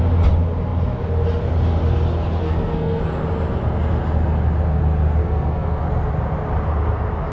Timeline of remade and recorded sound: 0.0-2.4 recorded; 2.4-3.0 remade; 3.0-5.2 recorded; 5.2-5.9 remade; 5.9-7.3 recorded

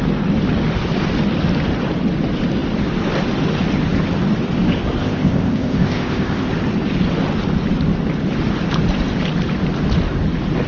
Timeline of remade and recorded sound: 0.0-5.0 recorded; 5.0-6.5 remade; 6.5-10.7 recorded

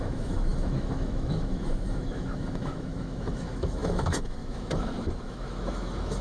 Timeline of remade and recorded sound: 0.0-6.2 remade